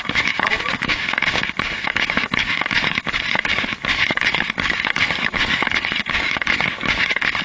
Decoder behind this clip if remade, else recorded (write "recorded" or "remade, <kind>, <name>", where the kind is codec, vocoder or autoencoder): remade, codec, DAC